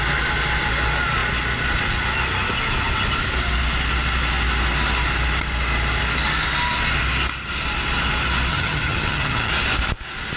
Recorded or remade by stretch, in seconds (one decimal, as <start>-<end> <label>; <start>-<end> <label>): 0.0-8.5 recorded; 8.5-9.5 remade; 9.5-10.4 recorded